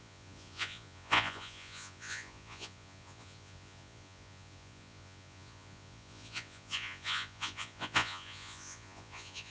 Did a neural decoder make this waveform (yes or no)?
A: yes